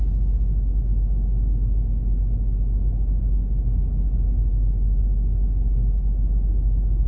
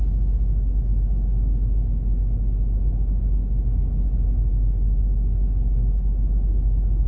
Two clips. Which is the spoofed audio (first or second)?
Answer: second